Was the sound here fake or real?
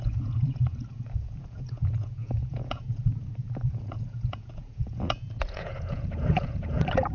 fake